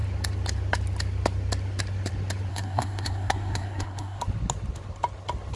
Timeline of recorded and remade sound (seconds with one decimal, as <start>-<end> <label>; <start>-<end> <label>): 0.0-2.5 recorded; 2.5-4.2 remade; 4.2-5.6 recorded